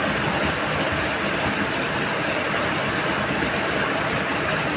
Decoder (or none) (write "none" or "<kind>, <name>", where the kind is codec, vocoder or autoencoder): none